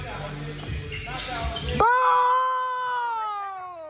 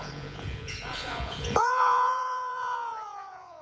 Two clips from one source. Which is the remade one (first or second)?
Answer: second